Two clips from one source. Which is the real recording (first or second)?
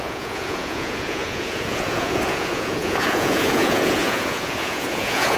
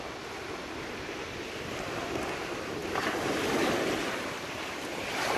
second